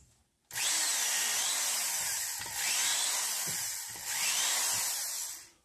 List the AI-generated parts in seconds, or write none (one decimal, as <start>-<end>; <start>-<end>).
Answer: none